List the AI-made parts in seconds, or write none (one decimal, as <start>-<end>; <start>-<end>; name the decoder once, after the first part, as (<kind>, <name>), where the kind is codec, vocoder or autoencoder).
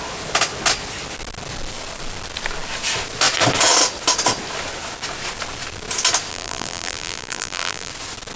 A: 6.3-7.9 (vocoder, BigVGAN v2)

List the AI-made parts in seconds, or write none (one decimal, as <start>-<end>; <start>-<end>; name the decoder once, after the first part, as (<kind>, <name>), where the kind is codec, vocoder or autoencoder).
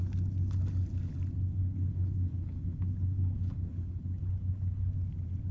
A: 1.6-4.9 (codec, HILCodec)